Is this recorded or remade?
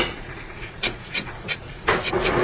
remade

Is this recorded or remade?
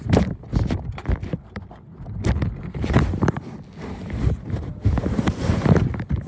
recorded